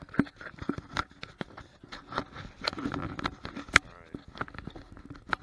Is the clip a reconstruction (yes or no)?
no